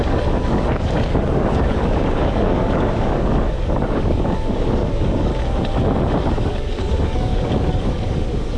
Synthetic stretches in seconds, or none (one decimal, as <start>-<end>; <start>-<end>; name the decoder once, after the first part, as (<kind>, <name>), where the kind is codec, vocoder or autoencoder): 0.0-5.3 (codec, DAC); 6.3-8.6